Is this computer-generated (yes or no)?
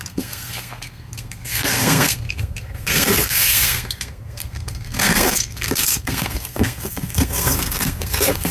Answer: yes